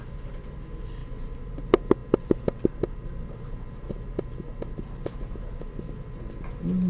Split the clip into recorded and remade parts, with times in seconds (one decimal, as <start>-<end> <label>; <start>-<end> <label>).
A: 0.0-6.9 recorded